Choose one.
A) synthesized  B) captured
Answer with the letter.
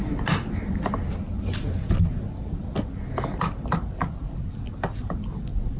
B